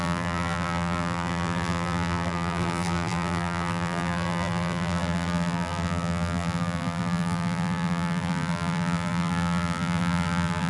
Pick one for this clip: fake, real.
fake